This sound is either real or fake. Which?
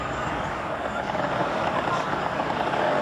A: fake